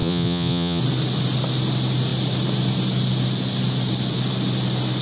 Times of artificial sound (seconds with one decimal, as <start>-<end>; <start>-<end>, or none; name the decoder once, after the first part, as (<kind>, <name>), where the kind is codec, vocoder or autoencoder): 0.0-0.8 (vocoder, Vocos)